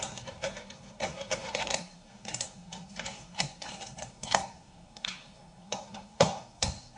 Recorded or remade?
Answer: remade